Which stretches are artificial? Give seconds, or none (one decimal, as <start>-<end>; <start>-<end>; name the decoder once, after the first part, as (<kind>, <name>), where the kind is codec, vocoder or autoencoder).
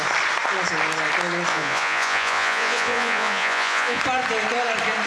1.5-4.0 (vocoder, Vocos)